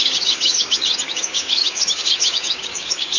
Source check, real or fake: fake